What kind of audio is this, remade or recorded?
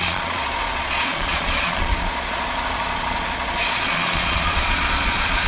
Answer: remade